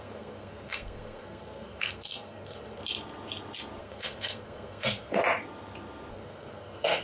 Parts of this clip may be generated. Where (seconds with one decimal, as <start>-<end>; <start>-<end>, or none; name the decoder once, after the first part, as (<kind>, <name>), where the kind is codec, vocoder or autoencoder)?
0.0-2.8 (codec, SNAC); 3.8-5.2; 6.1-7.0